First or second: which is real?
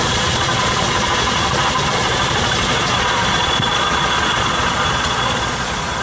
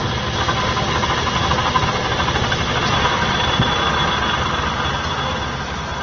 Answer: second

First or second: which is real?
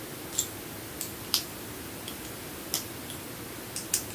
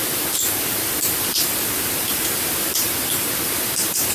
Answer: first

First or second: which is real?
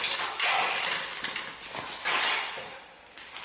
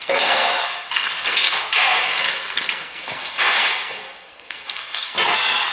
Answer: first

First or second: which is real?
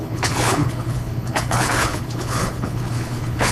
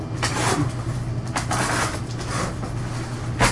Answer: second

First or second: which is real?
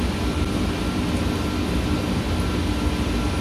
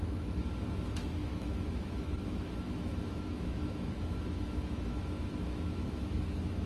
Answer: first